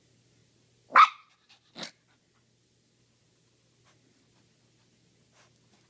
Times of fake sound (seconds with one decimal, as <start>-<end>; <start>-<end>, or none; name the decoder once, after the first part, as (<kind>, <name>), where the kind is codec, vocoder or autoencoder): none